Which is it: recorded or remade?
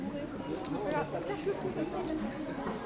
recorded